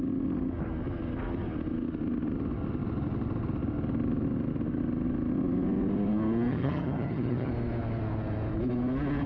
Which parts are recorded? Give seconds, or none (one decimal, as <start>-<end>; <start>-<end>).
0.0-6.5; 7.5-9.3